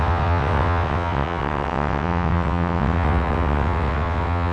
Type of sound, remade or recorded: remade